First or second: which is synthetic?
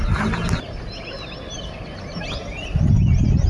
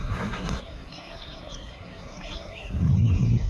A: second